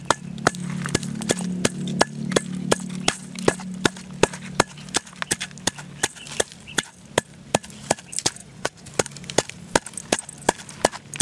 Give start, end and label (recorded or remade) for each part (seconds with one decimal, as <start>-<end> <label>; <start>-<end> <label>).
0.0-8.4 recorded; 8.4-8.9 remade; 8.9-11.2 recorded